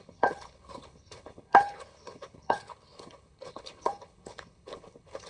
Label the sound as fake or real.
fake